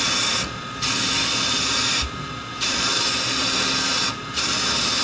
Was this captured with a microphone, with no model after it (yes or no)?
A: yes